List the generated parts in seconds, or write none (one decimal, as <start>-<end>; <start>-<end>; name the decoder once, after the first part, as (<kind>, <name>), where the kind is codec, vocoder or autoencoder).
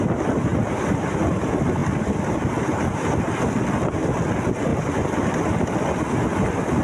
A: 0.5-1.4 (vocoder, BigVGAN v2); 1.8-3.4; 4.7-5.5